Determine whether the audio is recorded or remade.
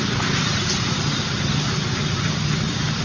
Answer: remade